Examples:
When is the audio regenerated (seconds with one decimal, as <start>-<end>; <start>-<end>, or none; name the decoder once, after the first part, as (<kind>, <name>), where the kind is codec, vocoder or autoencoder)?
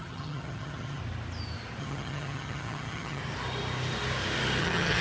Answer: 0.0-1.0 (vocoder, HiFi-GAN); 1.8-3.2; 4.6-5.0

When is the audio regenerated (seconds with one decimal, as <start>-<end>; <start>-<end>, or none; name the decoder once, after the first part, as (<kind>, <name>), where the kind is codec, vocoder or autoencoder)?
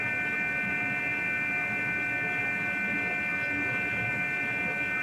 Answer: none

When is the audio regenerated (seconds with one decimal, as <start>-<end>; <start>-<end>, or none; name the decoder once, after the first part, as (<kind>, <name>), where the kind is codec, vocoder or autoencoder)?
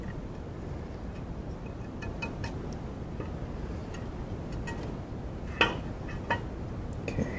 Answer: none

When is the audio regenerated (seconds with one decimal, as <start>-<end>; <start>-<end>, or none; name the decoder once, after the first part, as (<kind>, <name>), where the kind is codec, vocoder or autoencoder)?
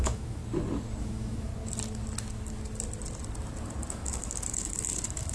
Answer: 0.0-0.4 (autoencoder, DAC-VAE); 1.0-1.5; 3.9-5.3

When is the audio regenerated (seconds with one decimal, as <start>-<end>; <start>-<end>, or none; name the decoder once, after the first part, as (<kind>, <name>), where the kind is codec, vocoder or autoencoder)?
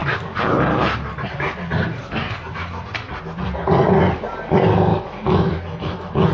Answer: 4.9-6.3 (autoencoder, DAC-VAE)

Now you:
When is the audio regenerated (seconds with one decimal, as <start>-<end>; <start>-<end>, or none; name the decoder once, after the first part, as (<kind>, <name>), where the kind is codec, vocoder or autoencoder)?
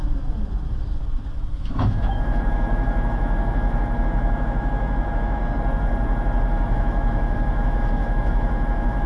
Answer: 1.4-5.4 (autoencoder, DAC-VAE); 6.5-9.1